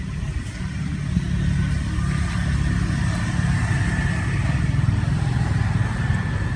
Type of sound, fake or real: real